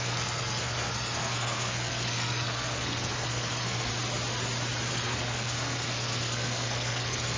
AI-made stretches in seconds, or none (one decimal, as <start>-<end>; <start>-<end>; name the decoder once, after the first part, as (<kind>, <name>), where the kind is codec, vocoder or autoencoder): 0.0-3.9 (codec, SNAC); 4.9-7.4